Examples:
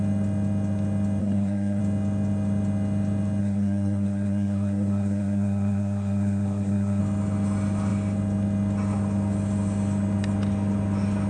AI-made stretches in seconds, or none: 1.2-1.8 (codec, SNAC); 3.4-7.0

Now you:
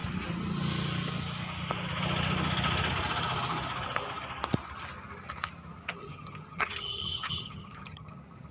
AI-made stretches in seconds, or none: 6.0-8.1 (vocoder, HiFi-GAN)